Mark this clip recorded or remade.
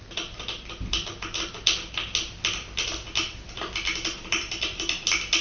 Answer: recorded